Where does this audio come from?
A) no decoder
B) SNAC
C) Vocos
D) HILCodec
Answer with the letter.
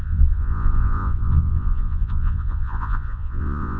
C